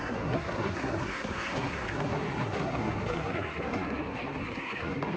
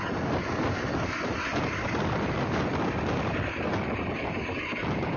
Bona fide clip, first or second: second